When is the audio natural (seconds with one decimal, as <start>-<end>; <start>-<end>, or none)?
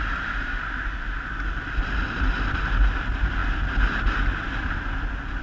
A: 0.0-5.4